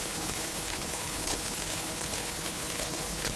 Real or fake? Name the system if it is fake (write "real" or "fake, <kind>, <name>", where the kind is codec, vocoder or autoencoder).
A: fake, codec, HILCodec